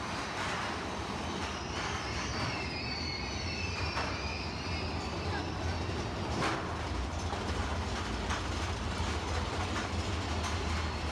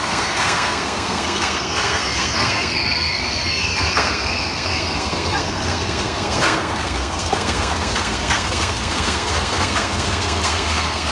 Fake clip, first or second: second